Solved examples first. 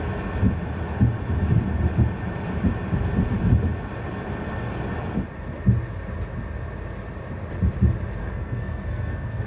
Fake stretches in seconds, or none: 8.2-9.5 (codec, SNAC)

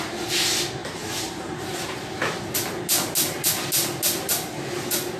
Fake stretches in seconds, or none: 0.8-2.5 (vocoder, BigVGAN v2)